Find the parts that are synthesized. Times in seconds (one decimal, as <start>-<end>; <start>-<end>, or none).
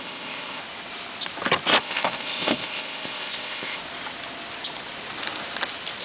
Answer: 0.0-0.6; 1.8-3.8